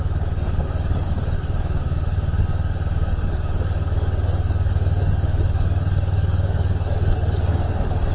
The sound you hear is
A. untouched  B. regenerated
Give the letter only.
B